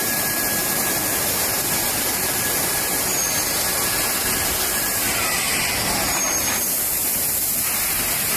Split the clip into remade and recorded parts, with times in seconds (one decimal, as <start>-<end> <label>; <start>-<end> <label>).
0.0-8.4 recorded